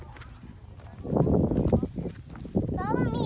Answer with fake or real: real